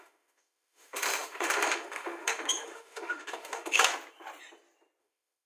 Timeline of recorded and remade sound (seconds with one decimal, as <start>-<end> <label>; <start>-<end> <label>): 0.0-3.9 remade; 3.9-5.0 recorded; 5.0-5.5 remade